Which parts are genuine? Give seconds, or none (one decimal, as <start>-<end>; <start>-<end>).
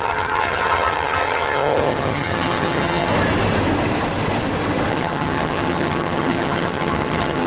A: 3.1-4.9